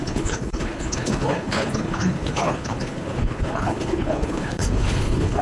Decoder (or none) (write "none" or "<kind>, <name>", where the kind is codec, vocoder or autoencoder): codec, HILCodec